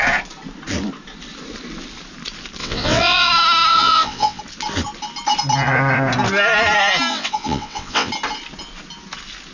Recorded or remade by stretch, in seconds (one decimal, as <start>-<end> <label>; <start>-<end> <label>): 0.0-2.6 recorded; 2.6-3.3 remade; 3.3-3.7 recorded; 3.7-4.4 remade; 4.4-7.1 recorded; 7.1-8.1 remade; 8.1-9.5 recorded